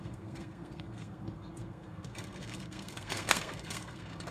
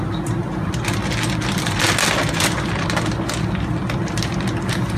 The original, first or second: second